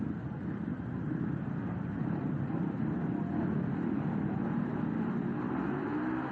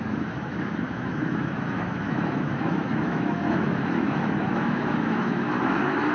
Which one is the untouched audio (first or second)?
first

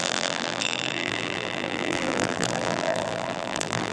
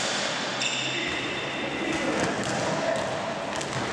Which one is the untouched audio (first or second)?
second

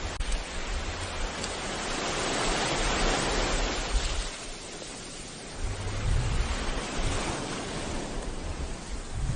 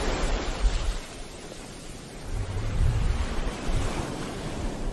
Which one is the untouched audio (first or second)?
first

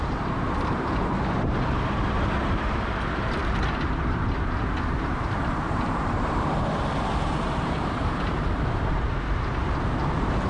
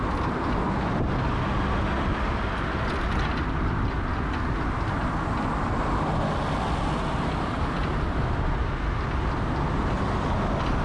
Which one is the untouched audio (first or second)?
second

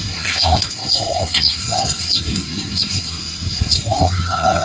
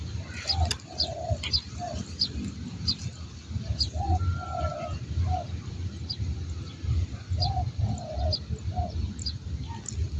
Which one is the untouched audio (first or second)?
second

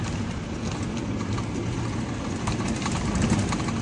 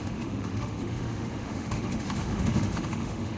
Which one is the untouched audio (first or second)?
first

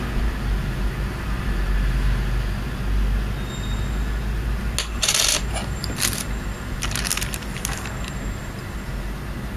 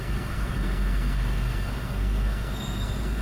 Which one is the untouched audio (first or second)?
first